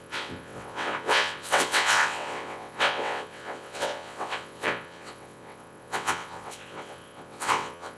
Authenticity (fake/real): fake